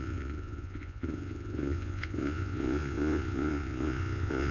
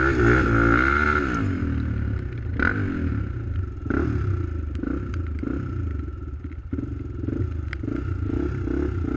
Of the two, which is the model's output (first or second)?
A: first